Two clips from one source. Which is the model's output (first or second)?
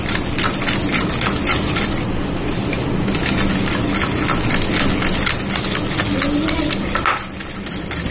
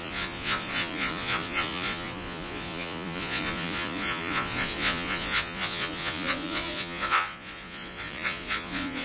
second